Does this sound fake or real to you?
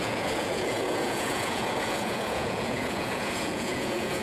fake